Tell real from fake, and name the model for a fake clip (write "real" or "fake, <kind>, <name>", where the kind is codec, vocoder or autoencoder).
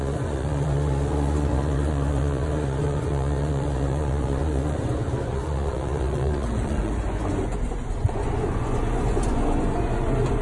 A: fake, vocoder, Vocos